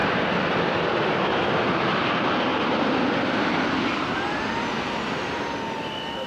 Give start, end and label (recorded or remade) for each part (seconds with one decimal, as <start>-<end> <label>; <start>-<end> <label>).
0.0-6.3 recorded